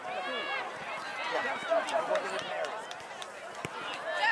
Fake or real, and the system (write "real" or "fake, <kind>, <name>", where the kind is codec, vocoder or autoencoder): real